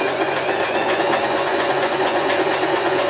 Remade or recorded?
remade